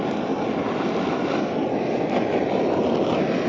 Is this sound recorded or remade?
recorded